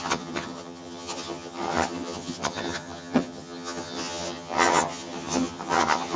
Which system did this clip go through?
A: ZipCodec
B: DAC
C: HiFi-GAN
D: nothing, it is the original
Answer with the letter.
C